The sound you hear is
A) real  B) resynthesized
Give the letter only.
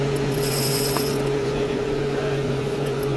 B